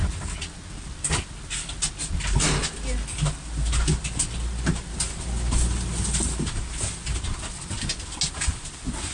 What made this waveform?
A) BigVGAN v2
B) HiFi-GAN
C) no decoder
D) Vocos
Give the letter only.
C